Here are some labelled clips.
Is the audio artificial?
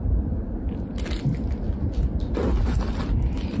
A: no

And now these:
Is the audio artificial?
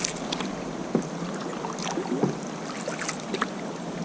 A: no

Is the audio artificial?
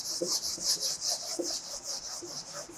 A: yes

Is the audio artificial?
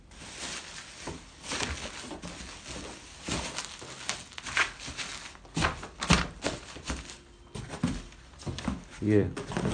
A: no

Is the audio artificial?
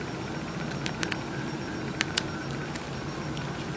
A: no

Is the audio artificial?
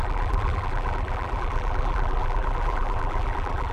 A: yes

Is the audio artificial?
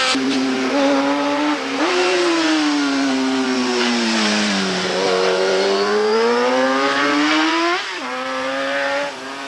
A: yes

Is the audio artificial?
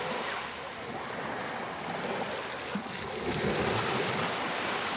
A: no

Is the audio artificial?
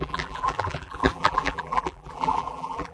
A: yes